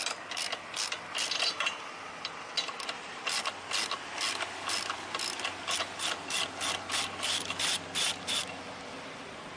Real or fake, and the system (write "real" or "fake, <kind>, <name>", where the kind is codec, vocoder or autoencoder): real